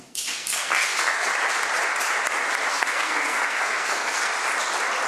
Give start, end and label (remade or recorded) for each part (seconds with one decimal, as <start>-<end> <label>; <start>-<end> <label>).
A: 0.0-1.3 remade; 1.3-2.7 recorded; 2.7-4.3 remade; 4.3-5.1 recorded